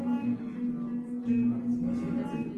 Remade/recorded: recorded